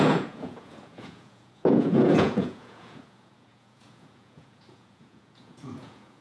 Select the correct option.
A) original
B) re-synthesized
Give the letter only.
B